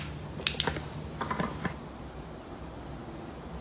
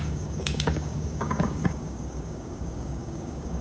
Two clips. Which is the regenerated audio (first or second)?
second